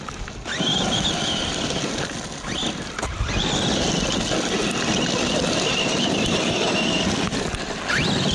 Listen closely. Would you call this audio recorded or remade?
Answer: recorded